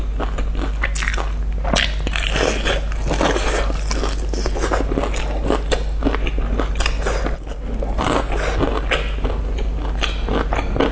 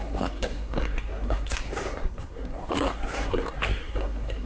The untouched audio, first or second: first